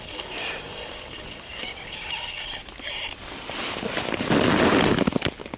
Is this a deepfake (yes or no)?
no